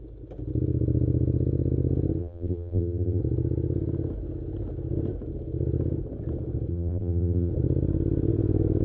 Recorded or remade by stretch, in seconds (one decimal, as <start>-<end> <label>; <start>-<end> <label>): 0.0-2.2 recorded; 2.2-3.2 remade; 3.2-6.7 recorded; 6.7-7.5 remade; 7.5-8.8 recorded

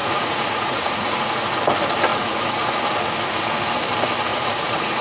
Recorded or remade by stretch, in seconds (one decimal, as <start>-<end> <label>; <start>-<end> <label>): 0.0-1.6 remade; 1.6-2.1 recorded; 2.1-2.8 remade; 2.8-4.3 recorded; 4.3-5.0 remade

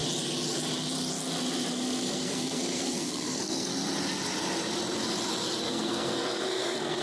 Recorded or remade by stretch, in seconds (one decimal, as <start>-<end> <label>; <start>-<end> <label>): 0.0-1.7 recorded; 1.7-3.7 remade; 3.7-5.7 recorded; 5.7-7.0 remade

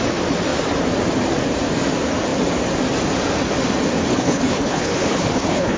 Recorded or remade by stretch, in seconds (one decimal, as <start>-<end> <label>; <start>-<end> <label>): 0.0-4.1 recorded; 4.1-5.8 remade

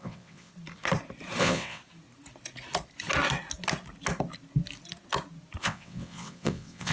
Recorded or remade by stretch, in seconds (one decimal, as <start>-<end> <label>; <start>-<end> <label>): 0.0-0.5 remade; 0.5-1.4 recorded; 1.4-1.8 remade; 1.8-5.6 recorded; 5.6-6.9 remade

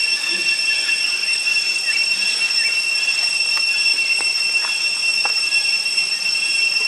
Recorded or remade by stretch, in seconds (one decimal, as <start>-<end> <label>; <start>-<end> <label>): 0.0-6.9 recorded